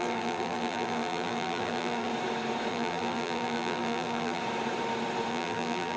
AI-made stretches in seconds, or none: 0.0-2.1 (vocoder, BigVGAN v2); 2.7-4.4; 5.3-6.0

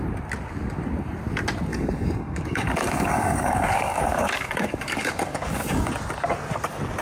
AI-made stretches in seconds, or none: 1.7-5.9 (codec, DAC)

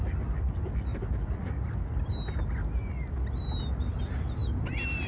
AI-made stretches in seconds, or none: none

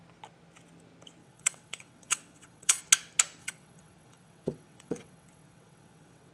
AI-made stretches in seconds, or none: 1.2-2.8 (vocoder, WaveNeXt); 3.4-6.3

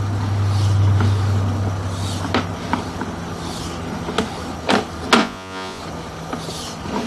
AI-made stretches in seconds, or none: 5.2-5.8 (vocoder, Vocos)

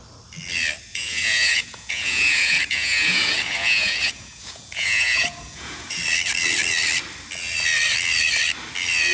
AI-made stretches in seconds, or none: 0.9-6.0 (vocoder, Vocos)